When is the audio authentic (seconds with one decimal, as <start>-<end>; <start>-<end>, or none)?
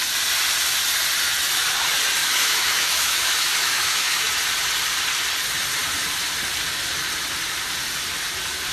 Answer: 0.0-2.2; 4.3-8.7